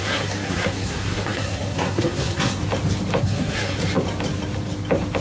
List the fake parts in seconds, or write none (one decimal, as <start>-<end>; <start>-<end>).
0.0-2.6; 3.2-3.8